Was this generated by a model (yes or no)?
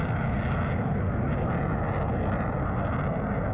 no